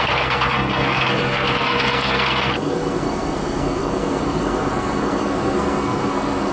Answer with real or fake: fake